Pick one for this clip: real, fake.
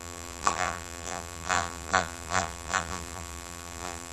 fake